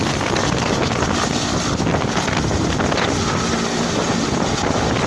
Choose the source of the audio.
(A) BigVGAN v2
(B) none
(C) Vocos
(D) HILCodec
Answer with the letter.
B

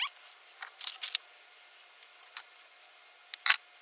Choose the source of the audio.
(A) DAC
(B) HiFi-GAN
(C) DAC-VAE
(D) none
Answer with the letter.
D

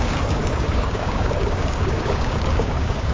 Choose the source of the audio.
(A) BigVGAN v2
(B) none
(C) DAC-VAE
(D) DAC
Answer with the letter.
D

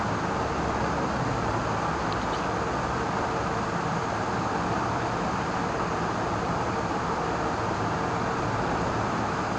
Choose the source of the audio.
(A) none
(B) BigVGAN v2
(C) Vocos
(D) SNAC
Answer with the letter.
A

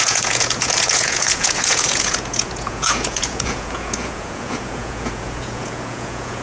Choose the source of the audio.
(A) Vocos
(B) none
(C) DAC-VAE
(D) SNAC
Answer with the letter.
A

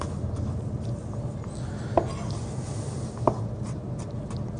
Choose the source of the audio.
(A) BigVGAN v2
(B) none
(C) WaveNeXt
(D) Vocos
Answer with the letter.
B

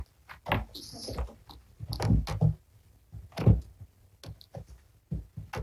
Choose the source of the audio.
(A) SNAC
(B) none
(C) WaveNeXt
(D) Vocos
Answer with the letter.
B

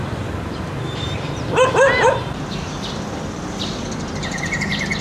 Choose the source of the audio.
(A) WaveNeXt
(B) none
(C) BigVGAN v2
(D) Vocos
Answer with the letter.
C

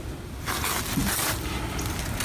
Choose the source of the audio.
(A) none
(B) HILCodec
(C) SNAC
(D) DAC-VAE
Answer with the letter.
A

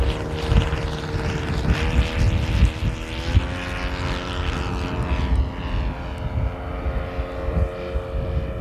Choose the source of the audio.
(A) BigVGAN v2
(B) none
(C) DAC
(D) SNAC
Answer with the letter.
B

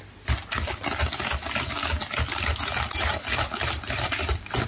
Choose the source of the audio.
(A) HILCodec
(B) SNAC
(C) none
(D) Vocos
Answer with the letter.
C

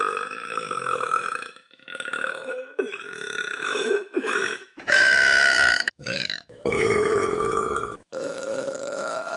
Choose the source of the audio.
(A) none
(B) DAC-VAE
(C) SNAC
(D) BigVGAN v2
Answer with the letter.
B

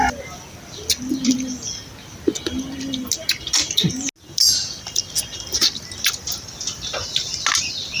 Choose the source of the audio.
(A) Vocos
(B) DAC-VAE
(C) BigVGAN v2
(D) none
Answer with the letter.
D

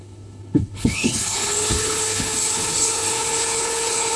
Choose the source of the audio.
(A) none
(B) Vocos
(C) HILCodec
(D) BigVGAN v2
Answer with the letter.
C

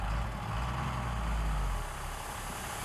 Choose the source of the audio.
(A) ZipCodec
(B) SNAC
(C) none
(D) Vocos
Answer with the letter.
C